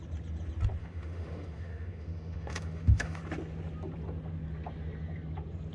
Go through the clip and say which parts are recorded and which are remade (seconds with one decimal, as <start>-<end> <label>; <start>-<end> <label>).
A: 0.0-0.8 recorded; 0.8-3.2 remade; 3.2-5.7 recorded